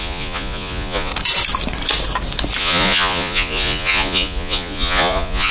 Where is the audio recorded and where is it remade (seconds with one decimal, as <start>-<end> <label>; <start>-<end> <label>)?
0.0-1.1 remade; 1.1-2.6 recorded; 2.6-5.5 remade